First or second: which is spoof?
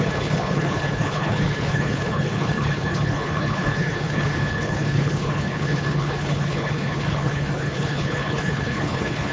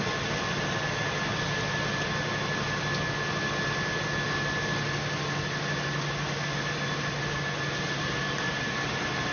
first